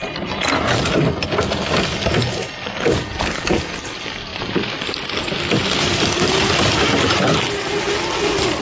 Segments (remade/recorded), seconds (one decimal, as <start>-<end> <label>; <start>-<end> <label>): 0.0-8.6 recorded